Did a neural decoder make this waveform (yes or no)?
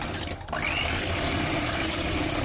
no